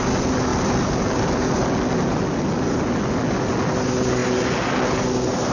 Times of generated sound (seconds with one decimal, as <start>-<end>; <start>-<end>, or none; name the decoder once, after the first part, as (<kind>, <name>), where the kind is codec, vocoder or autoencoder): none